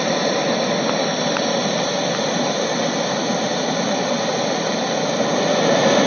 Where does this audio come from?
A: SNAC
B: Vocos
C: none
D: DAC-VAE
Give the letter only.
C